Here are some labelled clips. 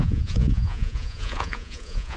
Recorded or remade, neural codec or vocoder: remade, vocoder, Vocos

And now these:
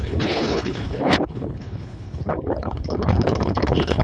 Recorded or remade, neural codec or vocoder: remade, codec, HILCodec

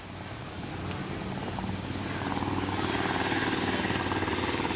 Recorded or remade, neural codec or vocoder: recorded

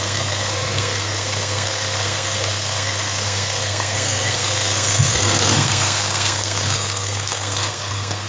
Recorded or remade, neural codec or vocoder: remade, codec, SNAC